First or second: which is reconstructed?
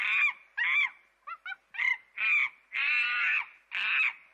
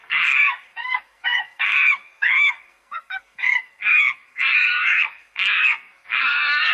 second